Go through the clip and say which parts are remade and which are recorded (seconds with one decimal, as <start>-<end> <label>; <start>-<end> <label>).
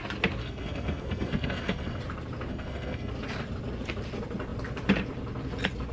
0.0-0.4 recorded; 0.4-2.0 remade; 2.0-2.5 recorded; 2.5-3.1 remade; 3.1-5.9 recorded